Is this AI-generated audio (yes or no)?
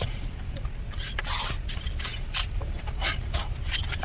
yes